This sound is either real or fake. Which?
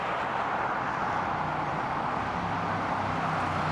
real